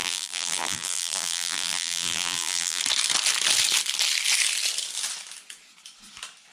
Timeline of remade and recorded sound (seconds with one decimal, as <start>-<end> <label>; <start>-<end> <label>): 0.0-2.8 remade; 2.8-6.5 recorded